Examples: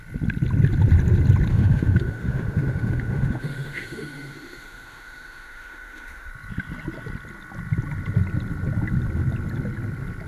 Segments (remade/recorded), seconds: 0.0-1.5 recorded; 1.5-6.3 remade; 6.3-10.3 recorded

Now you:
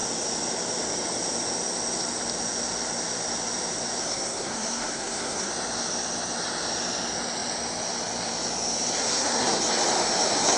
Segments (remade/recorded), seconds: 0.0-4.0 recorded; 4.0-5.5 remade; 5.5-9.0 recorded; 9.0-9.6 remade; 9.6-10.6 recorded

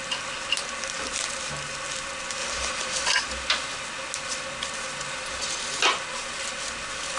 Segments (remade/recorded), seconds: 0.0-2.4 recorded; 2.4-3.1 remade; 3.1-7.2 recorded

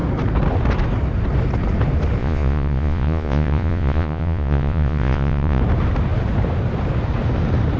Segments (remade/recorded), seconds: 0.0-2.2 recorded; 2.2-5.6 remade; 5.6-7.8 recorded

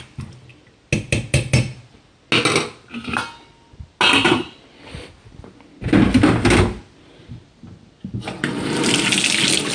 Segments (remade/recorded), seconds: 0.0-9.7 recorded